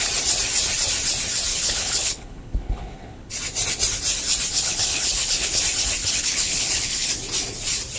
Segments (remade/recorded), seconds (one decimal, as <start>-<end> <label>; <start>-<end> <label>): 0.0-1.5 recorded; 1.5-3.3 remade; 3.3-4.5 recorded; 4.5-5.6 remade; 5.6-6.0 recorded; 6.0-7.1 remade; 7.1-8.0 recorded

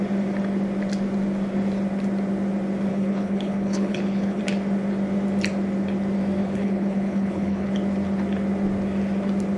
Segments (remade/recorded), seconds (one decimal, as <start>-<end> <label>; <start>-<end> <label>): 0.0-2.9 recorded; 2.9-4.4 remade; 4.4-6.4 recorded; 6.4-7.7 remade; 7.7-9.6 recorded

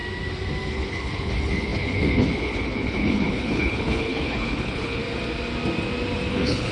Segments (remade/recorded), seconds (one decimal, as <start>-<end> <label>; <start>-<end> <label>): 0.0-0.7 recorded; 0.7-5.0 remade; 5.0-6.3 recorded; 6.3-6.7 remade

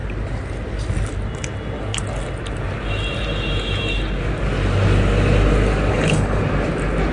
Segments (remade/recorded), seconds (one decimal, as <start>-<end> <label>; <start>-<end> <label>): 0.0-5.9 recorded; 5.9-6.4 remade; 6.4-7.1 recorded

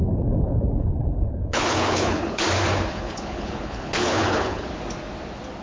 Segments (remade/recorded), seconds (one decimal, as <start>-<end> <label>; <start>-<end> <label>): 0.0-2.4 remade; 2.4-2.9 recorded; 2.9-4.7 remade; 4.7-5.6 recorded

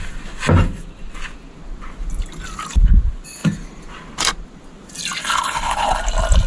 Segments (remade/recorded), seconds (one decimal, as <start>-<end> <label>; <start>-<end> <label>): 0.0-5.2 recorded; 5.2-6.0 remade; 6.0-6.5 recorded